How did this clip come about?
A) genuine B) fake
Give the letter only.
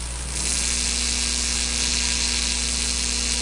A